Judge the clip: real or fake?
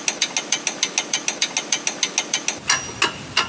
real